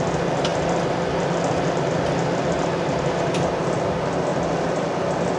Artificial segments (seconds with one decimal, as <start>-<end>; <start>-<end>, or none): none